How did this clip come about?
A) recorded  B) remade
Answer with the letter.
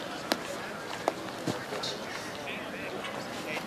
A